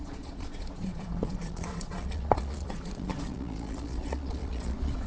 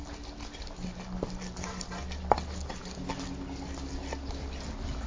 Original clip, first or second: second